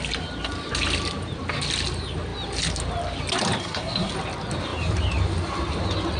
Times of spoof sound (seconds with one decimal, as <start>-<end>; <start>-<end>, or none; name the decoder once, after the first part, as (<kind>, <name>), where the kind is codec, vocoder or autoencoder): 3.6-4.1 (codec, SNAC)